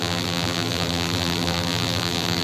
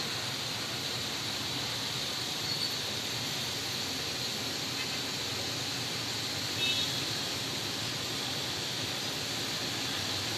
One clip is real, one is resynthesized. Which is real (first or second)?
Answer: second